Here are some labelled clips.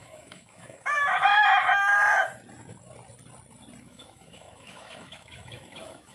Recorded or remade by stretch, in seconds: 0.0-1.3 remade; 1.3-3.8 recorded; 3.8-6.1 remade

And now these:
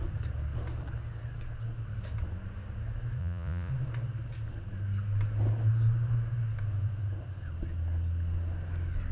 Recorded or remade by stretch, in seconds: 0.0-3.2 recorded; 3.2-3.7 remade; 3.7-9.1 recorded

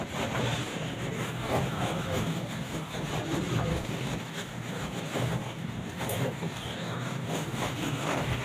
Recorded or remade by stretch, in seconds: 0.0-0.6 recorded; 0.6-3.1 remade; 3.1-3.7 recorded; 3.7-8.4 remade

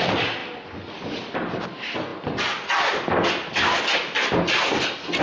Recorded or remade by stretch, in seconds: 0.0-5.2 recorded

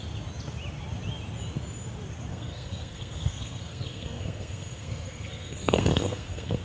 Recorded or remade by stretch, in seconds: 0.0-2.3 recorded; 2.3-6.6 remade